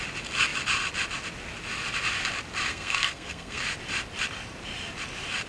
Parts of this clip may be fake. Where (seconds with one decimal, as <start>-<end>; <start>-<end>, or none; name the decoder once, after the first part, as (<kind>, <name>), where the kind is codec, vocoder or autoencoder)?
2.7-3.6 (codec, SNAC)